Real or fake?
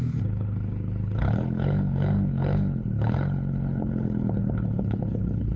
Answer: fake